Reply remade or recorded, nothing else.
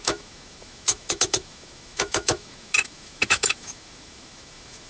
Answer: remade